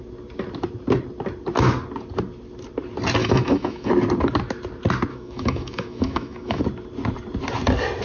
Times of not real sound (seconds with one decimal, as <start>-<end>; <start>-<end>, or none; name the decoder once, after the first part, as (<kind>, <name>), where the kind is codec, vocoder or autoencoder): 3.2-3.9 (autoencoder, DAC-VAE); 5.1-6.6